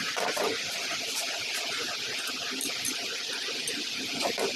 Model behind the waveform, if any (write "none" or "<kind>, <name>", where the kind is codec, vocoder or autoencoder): none